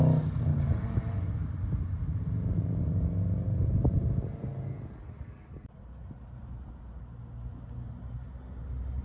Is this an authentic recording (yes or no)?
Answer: yes